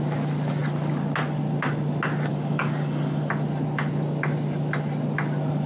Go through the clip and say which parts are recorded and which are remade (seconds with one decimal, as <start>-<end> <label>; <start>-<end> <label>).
0.0-2.3 recorded; 2.3-3.3 remade; 3.3-5.7 recorded